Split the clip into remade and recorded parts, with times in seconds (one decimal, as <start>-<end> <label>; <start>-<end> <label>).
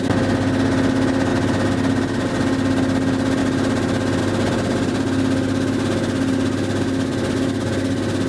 0.0-8.3 recorded